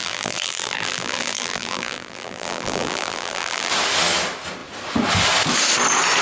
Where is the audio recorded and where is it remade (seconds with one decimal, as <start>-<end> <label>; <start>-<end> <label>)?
0.0-3.7 remade; 3.7-6.2 recorded